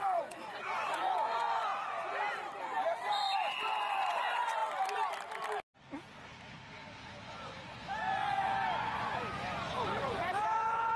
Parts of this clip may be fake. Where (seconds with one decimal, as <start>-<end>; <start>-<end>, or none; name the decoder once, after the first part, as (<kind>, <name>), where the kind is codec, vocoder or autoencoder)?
0.0-1.7 (vocoder, Vocos); 3.0-4.6; 7.2-11.0